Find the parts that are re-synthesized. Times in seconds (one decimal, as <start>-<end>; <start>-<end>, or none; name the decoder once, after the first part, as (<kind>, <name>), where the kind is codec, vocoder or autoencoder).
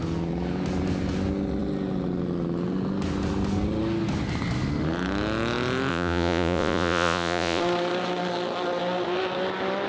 5.9-7.6 (vocoder, Vocos)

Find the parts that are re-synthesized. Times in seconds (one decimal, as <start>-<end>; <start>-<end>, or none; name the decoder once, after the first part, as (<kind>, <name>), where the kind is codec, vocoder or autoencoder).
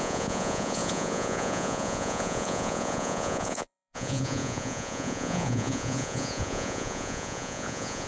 0.0-8.1 (vocoder, Vocos)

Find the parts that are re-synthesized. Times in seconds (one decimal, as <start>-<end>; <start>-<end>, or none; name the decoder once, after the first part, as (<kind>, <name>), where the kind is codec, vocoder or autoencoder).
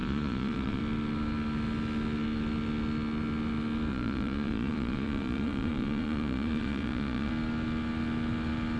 0.0-0.8 (vocoder, Vocos); 3.9-7.3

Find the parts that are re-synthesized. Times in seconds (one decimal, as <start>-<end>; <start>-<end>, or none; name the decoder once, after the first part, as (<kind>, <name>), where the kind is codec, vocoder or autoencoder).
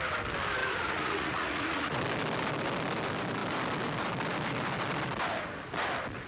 0.6-2.0 (vocoder, Vocos)